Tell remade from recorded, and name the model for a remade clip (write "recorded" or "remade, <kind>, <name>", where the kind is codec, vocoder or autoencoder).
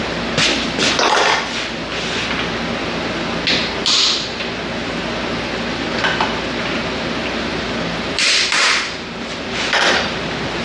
recorded